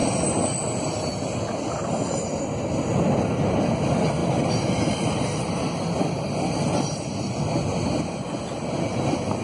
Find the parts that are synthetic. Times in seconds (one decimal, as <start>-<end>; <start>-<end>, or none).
4.2-7.3